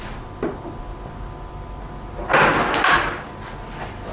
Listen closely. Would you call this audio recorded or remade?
recorded